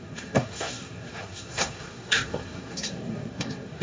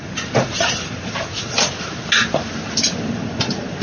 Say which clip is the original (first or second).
second